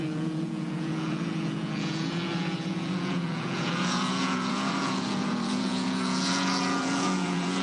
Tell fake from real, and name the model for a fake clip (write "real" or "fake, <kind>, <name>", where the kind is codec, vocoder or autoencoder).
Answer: fake, vocoder, Vocos